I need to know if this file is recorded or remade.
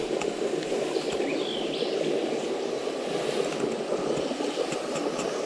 recorded